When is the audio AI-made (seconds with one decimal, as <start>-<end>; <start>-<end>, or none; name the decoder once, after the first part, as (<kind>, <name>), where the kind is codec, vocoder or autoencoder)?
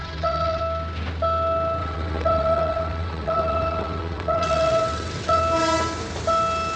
0.0-0.6 (vocoder, WaveNeXt); 1.8-5.4